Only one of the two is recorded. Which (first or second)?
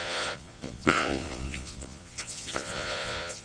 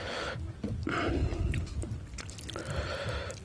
second